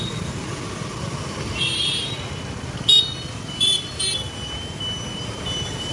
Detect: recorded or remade remade